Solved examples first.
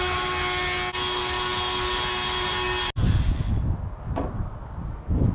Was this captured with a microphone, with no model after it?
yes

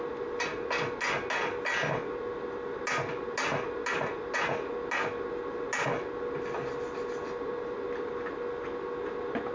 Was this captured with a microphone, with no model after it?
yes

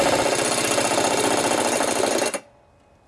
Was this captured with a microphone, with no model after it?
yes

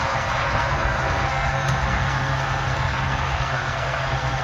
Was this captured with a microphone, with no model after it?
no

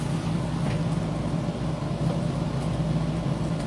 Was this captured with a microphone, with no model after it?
yes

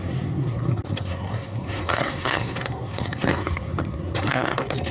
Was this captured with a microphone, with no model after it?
no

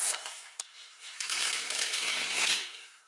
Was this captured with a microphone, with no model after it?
no